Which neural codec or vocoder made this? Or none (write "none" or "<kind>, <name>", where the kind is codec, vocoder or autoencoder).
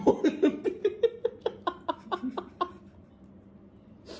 none